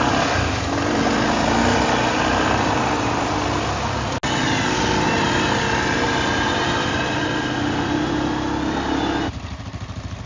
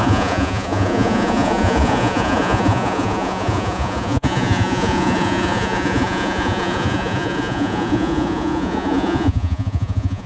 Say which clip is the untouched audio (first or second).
first